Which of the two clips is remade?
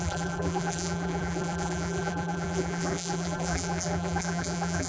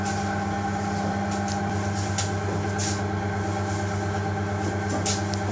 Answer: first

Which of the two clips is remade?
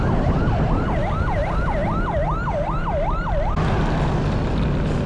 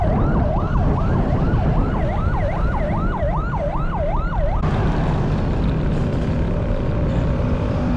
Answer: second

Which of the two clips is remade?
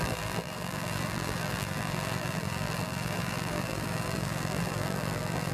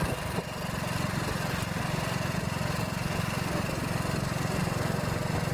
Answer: first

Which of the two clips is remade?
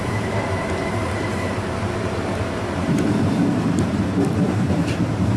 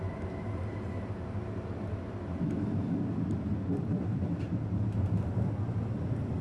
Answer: first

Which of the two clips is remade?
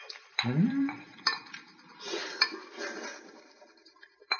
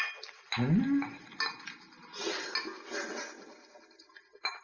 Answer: first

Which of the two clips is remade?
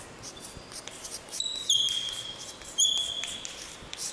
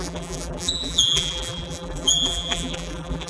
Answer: second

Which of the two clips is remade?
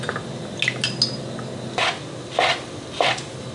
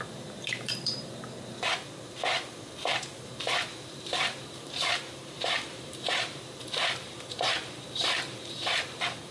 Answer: second